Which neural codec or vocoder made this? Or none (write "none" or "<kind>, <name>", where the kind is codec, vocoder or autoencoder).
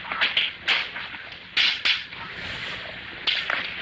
none